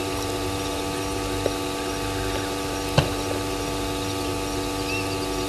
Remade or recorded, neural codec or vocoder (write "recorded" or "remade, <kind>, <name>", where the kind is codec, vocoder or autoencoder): recorded